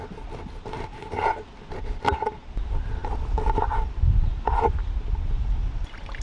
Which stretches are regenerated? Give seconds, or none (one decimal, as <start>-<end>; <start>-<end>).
none